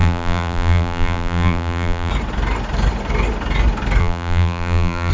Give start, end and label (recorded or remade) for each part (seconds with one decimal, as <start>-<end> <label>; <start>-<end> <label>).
0.0-2.1 remade; 2.1-4.0 recorded; 4.0-5.1 remade